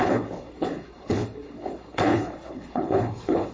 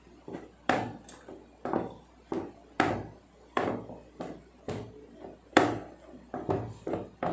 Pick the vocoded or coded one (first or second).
first